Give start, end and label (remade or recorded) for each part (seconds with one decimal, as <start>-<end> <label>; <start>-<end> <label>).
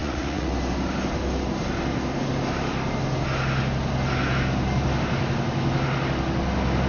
0.0-0.5 remade; 0.5-6.9 recorded